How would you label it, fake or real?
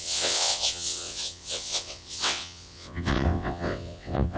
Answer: fake